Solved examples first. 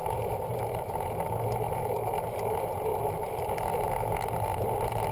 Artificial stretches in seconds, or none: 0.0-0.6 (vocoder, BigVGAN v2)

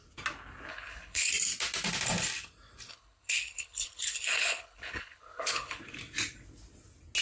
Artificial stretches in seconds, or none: 0.7-1.3 (codec, HILCodec); 2.9-5.8

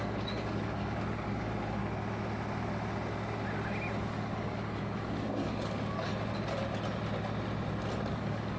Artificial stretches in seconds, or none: 0.0-1.8 (codec, DAC); 4.0-6.1; 8.1-8.6

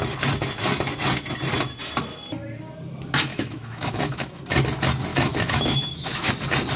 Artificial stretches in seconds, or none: 3.3-4.4 (autoencoder, DAC-VAE); 5.1-6.3

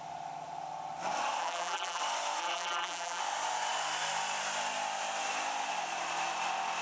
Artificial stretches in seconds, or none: 1.4-2.0 (vocoder, BigVGAN v2); 2.4-3.2

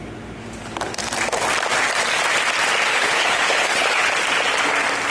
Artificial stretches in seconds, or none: 2.9-4.1 (codec, HILCodec)

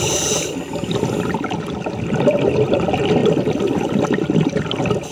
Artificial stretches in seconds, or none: none

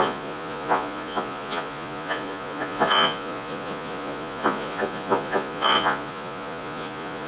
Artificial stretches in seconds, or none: 0.0-7.3 (vocoder, Vocos)